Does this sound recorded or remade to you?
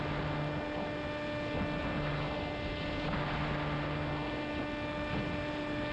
recorded